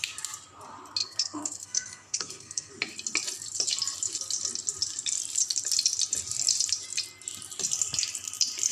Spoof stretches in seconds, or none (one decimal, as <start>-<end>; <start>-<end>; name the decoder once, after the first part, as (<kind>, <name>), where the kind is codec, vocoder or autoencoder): 1.0-2.7 (codec, SNAC)